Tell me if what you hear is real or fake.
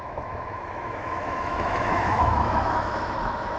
fake